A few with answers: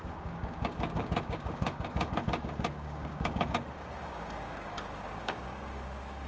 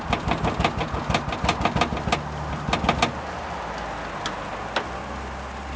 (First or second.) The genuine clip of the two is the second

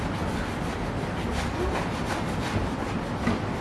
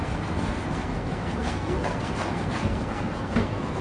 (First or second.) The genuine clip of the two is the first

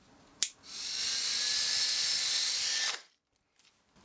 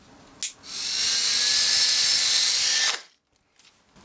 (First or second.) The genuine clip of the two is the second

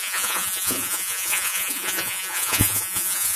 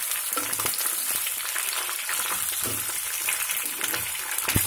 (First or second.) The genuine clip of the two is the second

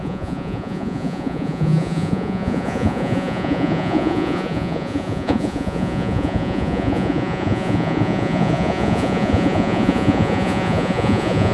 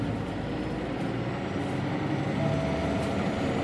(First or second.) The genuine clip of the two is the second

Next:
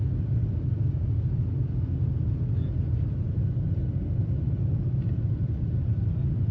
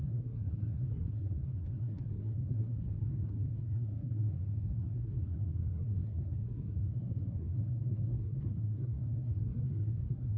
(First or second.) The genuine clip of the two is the first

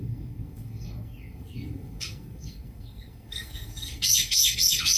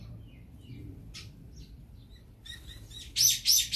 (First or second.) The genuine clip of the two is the second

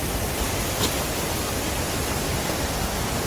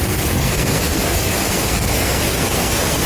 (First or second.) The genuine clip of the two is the first